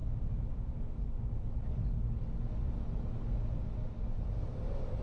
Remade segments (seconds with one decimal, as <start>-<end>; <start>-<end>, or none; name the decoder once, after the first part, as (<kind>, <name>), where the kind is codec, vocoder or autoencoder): none